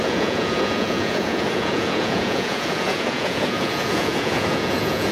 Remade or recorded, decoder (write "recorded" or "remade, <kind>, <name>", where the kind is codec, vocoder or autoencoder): remade, vocoder, Vocos